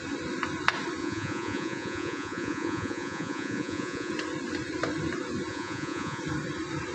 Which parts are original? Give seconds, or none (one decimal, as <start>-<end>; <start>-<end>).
0.0-1.0; 4.1-5.5; 6.2-6.9